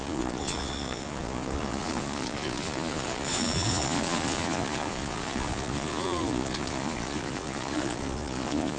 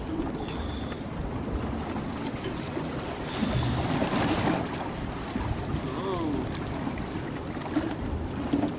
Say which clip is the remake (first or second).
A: first